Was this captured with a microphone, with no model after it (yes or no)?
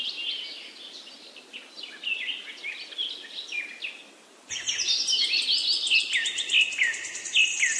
yes